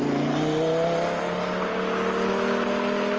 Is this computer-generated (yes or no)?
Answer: no